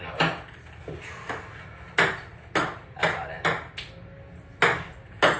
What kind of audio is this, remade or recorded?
recorded